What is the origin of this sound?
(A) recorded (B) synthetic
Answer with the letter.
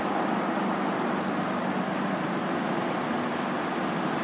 A